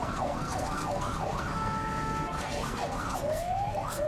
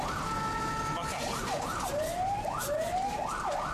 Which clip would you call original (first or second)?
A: second